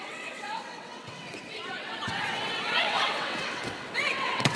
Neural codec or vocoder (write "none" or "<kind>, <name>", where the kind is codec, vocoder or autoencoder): vocoder, WaveNeXt